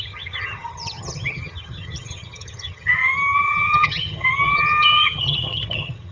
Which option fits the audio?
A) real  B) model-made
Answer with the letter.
B